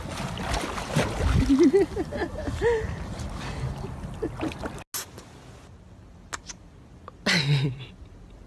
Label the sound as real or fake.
real